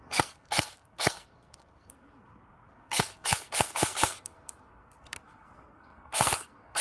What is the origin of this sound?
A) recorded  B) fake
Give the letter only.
B